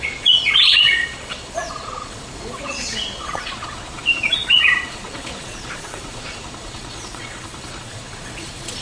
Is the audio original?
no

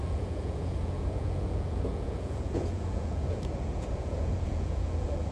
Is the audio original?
no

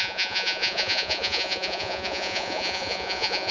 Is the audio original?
no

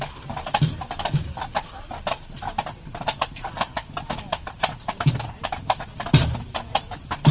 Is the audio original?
yes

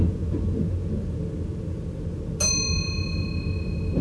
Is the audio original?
yes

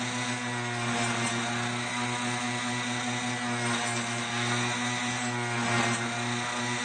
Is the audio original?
yes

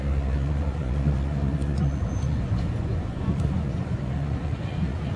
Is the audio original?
no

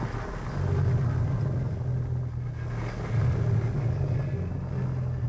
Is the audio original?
yes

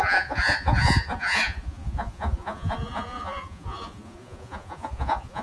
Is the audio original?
no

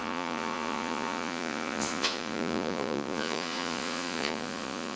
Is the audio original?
no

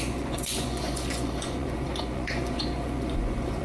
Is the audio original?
no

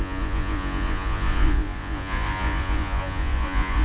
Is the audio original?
no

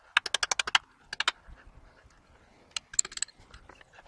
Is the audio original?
yes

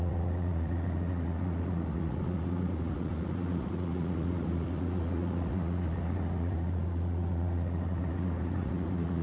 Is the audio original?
no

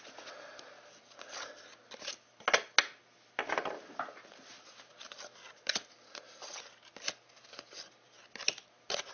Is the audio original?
yes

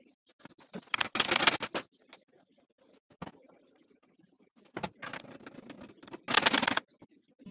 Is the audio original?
yes